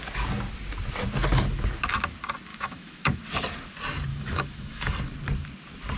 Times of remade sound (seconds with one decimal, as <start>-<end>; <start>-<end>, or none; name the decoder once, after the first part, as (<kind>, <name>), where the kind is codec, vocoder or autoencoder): 2.5-3.2 (autoencoder, DAC-VAE); 4.1-4.9